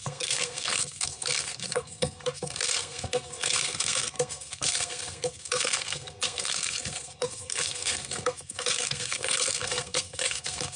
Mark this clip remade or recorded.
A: remade